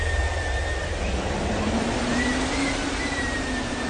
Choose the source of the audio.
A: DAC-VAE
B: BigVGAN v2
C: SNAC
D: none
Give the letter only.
D